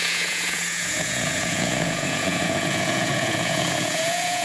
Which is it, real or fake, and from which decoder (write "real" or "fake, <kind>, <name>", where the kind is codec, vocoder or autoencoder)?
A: fake, vocoder, Vocos